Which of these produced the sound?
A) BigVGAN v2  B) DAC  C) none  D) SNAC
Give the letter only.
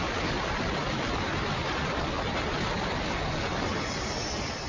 A